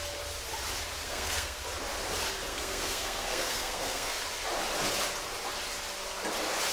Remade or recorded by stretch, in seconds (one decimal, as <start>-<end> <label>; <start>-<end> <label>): 0.0-1.0 recorded; 1.0-1.6 remade; 1.6-2.5 recorded; 2.5-4.2 remade; 4.2-6.7 recorded